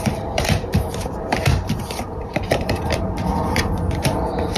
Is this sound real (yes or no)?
no